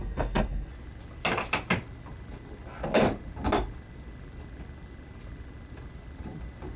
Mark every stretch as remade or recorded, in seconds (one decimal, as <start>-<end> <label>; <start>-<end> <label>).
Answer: 0.0-0.7 remade; 0.7-6.8 recorded